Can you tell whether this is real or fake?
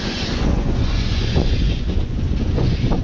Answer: fake